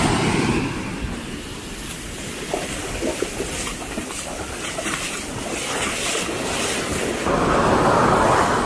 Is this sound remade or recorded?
recorded